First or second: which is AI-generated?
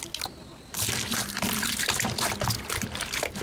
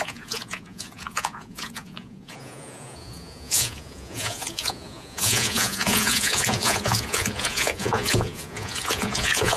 second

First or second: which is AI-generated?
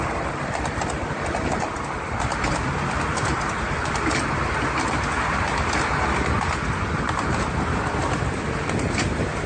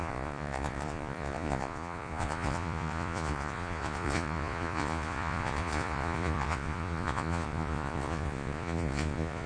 second